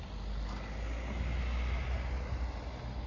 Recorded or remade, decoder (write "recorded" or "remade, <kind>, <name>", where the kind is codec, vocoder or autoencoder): recorded